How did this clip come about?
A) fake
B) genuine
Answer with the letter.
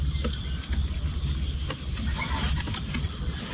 B